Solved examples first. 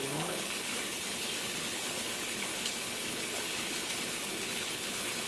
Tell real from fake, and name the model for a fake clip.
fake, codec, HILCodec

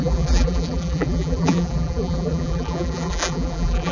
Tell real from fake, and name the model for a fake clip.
fake, vocoder, BigVGAN v2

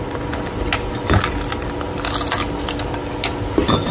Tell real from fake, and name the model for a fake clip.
real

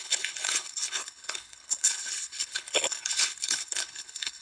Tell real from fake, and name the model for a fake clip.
fake, codec, HILCodec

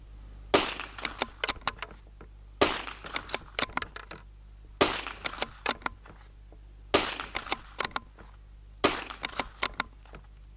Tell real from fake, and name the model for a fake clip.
real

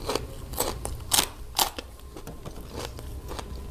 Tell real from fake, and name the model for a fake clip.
real